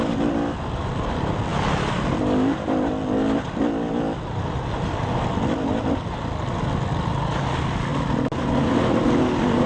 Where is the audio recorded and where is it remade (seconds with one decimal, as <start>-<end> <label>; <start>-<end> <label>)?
0.0-9.7 recorded